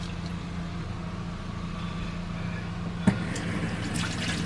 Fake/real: real